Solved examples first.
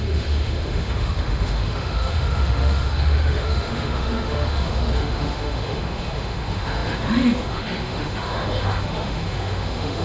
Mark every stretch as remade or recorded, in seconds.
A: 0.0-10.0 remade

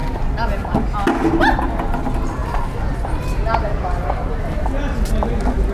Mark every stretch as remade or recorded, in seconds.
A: 0.0-5.7 recorded

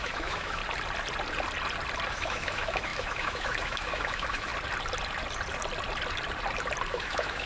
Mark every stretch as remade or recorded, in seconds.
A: 0.0-0.6 remade; 0.6-2.1 recorded; 2.1-4.5 remade; 4.5-6.9 recorded; 6.9-7.5 remade

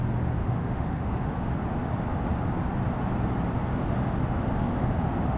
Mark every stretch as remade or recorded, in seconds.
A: 0.0-0.4 recorded; 0.4-1.5 remade; 1.5-3.7 recorded; 3.7-4.9 remade; 4.9-5.4 recorded